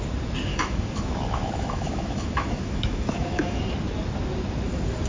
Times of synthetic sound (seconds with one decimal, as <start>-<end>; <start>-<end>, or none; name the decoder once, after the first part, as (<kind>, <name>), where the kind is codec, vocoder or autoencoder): 0.5-3.6 (autoencoder, DAC-VAE)